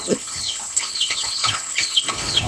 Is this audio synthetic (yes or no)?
yes